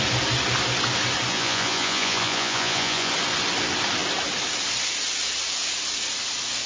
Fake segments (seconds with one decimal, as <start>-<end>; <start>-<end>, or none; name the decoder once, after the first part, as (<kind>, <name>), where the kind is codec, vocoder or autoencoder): 1.3-3.1 (vocoder, Vocos)